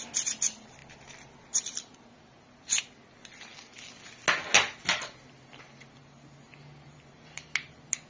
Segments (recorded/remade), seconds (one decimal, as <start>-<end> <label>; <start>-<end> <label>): 0.0-8.1 recorded